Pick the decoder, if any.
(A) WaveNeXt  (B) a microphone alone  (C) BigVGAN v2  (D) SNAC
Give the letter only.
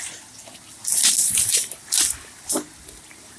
B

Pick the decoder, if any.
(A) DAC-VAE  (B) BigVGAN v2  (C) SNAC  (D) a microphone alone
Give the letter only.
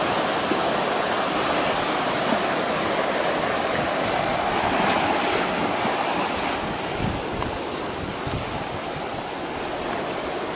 D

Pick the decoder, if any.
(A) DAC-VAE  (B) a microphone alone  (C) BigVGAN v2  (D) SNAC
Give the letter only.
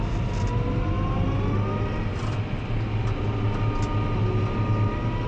B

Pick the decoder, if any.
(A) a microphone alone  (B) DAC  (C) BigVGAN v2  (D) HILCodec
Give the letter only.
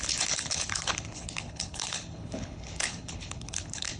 D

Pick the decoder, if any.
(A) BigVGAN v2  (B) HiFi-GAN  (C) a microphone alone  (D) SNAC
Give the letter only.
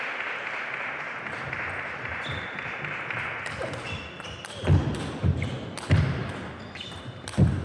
C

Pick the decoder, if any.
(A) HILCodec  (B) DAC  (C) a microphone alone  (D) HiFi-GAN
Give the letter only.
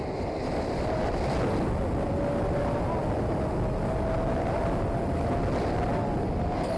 C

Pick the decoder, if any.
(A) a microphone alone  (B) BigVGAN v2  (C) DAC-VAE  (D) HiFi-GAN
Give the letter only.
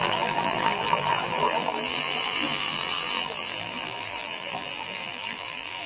B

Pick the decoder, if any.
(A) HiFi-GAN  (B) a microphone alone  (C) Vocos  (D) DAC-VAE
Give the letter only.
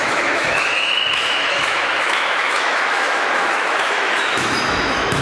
D